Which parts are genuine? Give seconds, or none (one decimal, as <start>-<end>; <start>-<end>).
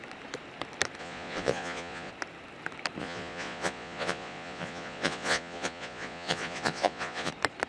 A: 0.0-1.0; 2.1-3.0; 7.3-7.7